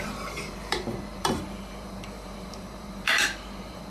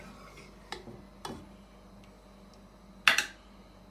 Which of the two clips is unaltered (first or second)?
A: second